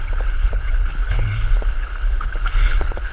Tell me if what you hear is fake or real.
fake